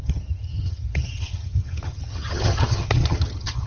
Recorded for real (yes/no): no